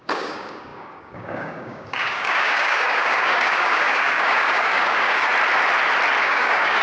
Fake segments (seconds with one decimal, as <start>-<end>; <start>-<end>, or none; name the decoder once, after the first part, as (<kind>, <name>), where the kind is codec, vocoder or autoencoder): 0.0-5.3 (codec, DAC); 6.2-6.8